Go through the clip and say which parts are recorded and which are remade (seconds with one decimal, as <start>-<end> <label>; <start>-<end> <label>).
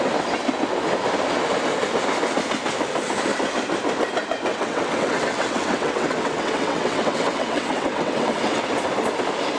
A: 0.0-4.5 recorded; 4.5-8.6 remade; 8.6-9.6 recorded